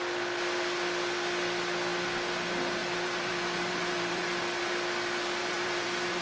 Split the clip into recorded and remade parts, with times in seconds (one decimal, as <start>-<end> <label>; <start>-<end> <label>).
0.0-2.8 recorded; 2.8-4.7 remade; 4.7-5.4 recorded; 5.4-6.2 remade